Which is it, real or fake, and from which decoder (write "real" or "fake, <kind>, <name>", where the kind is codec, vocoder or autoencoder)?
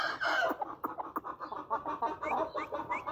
real